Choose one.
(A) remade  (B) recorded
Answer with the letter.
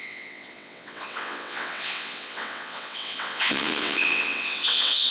A